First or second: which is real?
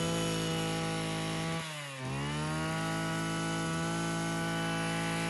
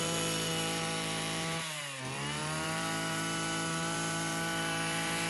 first